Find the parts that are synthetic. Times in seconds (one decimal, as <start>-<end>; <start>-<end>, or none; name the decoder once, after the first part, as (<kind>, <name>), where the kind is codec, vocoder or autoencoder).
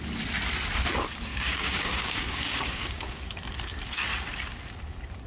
1.3-3.2 (codec, DAC)